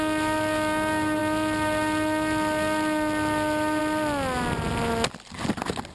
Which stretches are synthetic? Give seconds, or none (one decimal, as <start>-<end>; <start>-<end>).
none